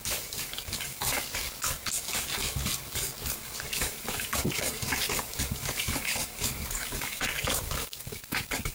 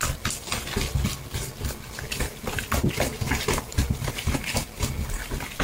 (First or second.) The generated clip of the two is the first